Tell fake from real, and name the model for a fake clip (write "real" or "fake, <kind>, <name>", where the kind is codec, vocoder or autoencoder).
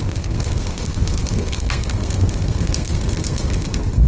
fake, codec, SNAC